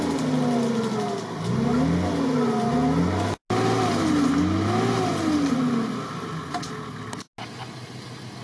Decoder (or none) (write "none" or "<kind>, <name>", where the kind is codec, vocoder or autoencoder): none